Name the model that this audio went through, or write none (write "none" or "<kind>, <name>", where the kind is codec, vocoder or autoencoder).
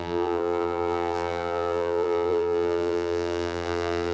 vocoder, BigVGAN v2